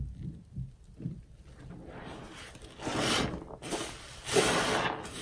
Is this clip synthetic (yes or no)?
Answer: no